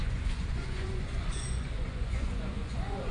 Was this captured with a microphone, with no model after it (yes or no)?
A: no